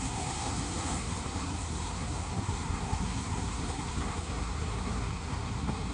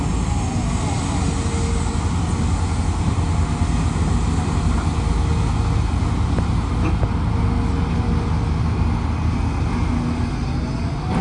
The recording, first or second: second